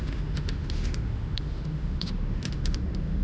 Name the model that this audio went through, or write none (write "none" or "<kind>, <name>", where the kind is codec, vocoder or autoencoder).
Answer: autoencoder, DAC-VAE